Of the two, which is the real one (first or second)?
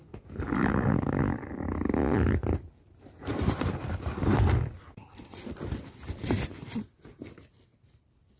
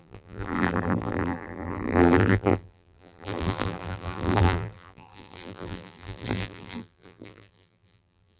first